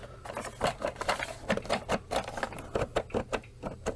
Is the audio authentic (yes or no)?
yes